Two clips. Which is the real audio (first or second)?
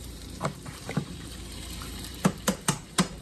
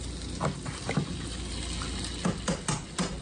second